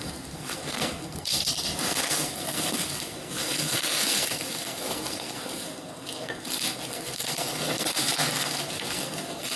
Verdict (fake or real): fake